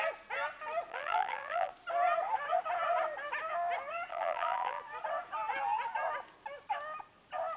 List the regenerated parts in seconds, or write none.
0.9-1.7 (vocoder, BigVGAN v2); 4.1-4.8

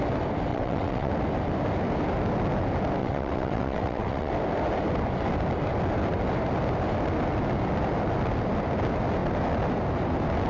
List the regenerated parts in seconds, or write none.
0.5-1.1 (vocoder, WaveNeXt); 3.0-4.3

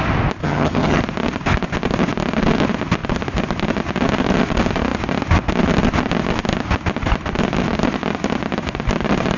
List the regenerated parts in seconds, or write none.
0.4-1.0 (vocoder, HiFi-GAN)

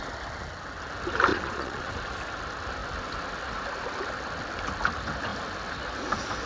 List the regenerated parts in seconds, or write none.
1.3-1.9 (vocoder, Vocos)

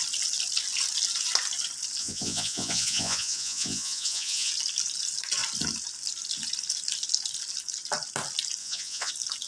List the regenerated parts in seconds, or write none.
2.0-4.5 (vocoder, Vocos); 8.6-9.1

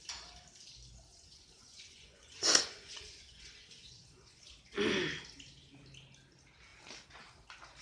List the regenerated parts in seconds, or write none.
1.1-4.4 (vocoder, Vocos)

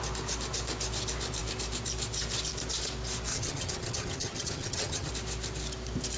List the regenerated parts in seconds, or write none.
3.3-5.1 (vocoder, HiFi-GAN)

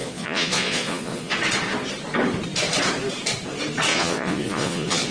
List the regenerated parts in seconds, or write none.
0.0-1.3 (vocoder, Vocos); 3.9-5.1